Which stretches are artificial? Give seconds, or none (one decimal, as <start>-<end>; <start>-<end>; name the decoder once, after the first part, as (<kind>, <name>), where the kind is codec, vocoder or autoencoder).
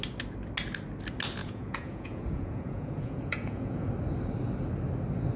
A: 1.4-3.9 (vocoder, Vocos)